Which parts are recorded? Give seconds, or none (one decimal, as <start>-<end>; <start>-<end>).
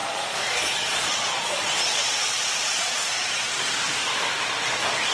3.1-5.1